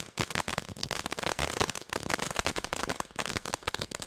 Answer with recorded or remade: remade